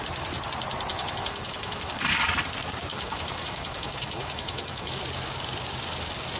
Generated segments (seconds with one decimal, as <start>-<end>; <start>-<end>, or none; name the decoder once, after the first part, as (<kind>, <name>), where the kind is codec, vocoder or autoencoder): 0.9-1.9 (autoencoder, DAC-VAE); 2.9-5.0